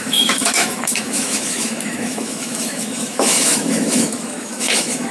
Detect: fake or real fake